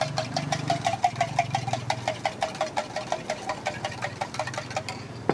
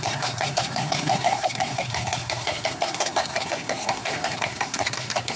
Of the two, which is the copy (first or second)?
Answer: second